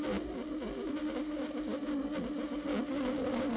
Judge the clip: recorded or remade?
recorded